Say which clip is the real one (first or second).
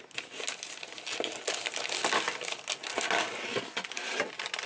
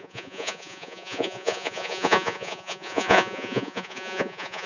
first